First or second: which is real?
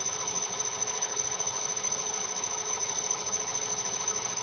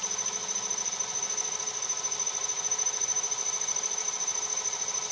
second